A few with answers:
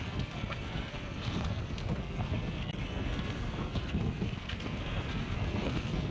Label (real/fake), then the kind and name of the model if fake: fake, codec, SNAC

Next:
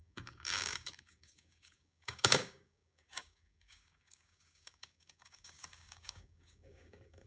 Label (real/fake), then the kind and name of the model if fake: fake, codec, DAC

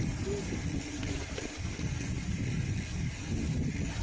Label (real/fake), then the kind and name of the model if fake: real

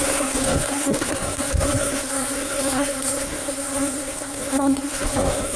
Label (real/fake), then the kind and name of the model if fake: fake, codec, SNAC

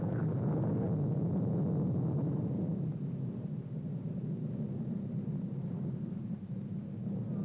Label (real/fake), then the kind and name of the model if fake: real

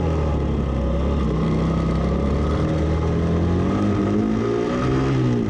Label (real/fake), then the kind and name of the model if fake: real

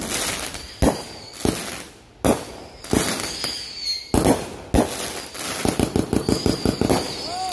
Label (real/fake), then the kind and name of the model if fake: real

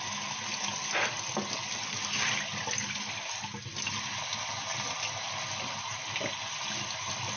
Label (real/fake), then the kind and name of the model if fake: real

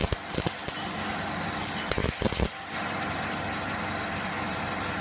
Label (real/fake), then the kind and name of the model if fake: real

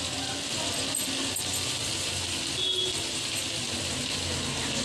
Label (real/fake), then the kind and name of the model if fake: real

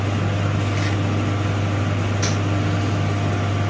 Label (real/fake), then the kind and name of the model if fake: real